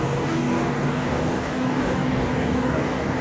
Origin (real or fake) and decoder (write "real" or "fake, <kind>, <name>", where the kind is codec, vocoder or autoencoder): fake, codec, DAC